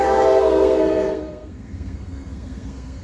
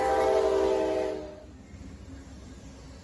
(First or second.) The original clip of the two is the second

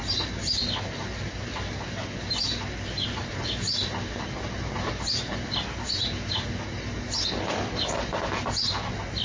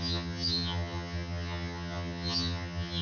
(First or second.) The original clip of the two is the first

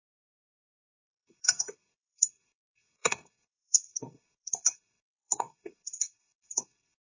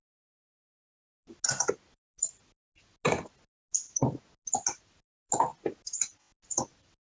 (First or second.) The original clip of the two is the second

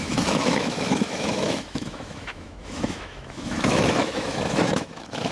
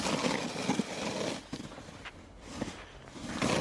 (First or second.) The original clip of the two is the second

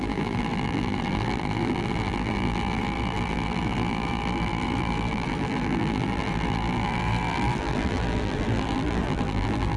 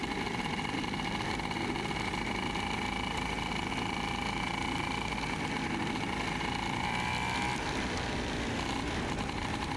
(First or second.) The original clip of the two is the second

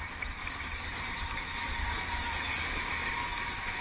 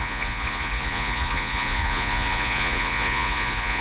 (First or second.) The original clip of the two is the first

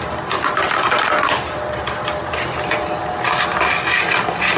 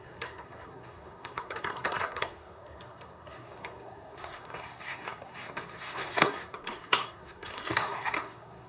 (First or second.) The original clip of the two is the first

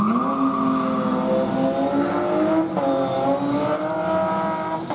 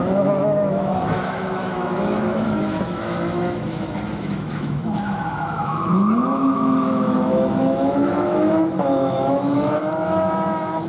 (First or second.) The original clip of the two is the first